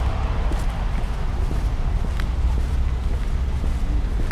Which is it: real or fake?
real